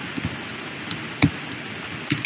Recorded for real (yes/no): yes